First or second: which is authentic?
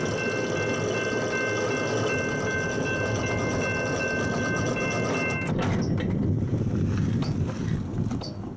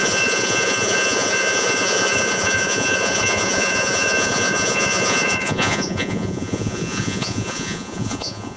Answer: first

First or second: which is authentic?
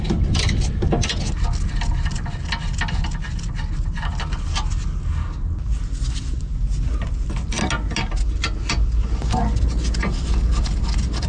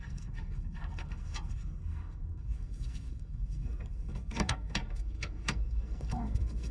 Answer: first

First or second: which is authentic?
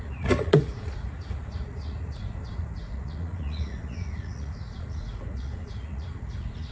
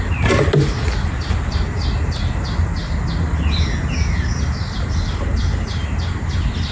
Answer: second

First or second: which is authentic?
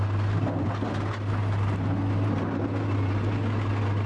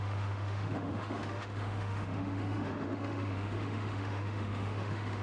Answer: first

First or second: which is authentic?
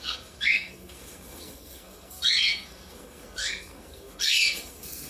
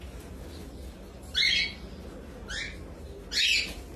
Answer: second